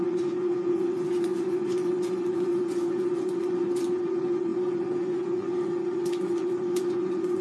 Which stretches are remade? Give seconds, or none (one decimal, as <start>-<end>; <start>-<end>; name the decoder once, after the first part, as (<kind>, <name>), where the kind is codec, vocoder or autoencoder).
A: 0.0-7.4 (vocoder, Vocos)